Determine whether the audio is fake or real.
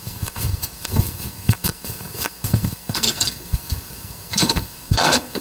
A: fake